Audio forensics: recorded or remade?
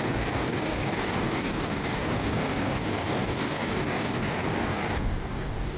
remade